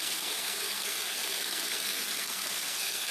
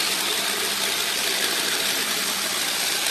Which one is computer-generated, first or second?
first